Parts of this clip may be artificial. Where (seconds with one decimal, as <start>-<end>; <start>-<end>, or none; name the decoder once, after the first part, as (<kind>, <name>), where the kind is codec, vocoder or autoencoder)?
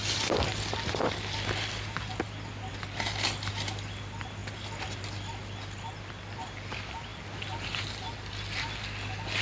none